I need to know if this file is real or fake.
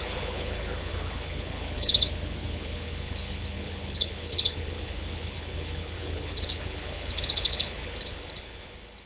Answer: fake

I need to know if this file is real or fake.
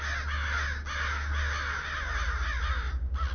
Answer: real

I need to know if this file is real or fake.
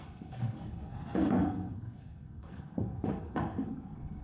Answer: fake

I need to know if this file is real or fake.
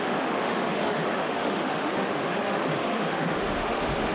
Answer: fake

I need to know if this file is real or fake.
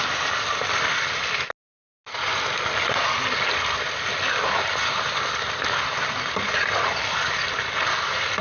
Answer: real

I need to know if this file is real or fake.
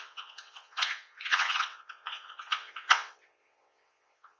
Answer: fake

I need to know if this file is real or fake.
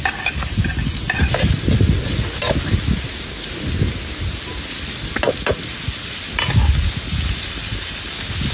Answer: real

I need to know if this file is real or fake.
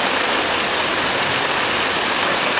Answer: real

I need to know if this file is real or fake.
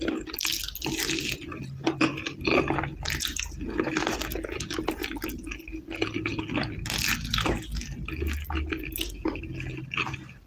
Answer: real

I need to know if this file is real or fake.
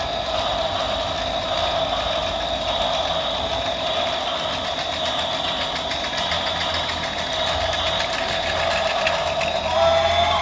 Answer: real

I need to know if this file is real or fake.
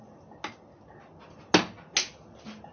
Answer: real